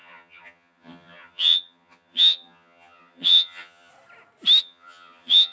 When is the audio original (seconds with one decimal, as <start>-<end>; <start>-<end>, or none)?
3.9-4.6